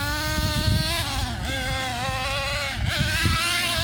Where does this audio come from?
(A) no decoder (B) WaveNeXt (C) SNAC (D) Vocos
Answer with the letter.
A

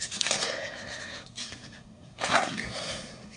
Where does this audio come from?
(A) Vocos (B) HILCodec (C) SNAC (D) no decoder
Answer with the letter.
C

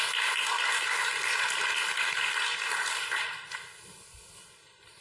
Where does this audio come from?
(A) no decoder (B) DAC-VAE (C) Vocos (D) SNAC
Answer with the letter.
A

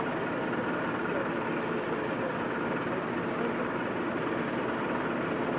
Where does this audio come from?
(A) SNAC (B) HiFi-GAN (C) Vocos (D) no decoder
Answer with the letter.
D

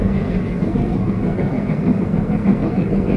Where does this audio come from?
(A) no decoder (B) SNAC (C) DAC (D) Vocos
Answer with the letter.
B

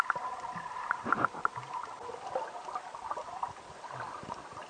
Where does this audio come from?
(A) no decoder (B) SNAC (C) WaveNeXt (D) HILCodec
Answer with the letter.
A